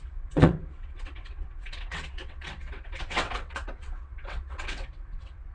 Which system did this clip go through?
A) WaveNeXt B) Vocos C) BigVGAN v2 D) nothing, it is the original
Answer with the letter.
A